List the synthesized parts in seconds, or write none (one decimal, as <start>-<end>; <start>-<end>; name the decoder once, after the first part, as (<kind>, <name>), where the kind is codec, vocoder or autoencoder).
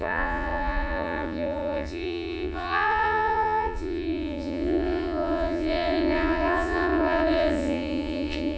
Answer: 0.0-8.6 (vocoder, Vocos)